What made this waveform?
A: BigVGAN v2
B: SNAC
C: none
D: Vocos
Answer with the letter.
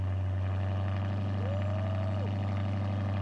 C